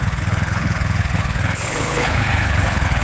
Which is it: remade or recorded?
remade